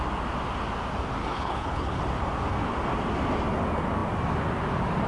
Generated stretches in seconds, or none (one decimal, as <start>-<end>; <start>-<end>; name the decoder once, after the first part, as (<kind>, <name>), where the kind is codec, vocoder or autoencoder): 1.2-2.0 (codec, HILCodec)